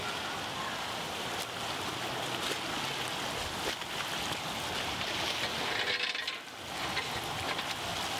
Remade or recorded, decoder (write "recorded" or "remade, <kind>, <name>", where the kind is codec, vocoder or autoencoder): recorded